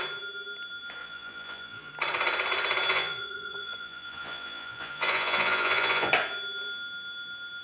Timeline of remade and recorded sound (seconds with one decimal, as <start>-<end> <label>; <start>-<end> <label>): 0.0-1.0 recorded; 1.0-1.9 remade; 1.9-2.9 recorded; 2.9-6.1 remade; 6.1-7.6 recorded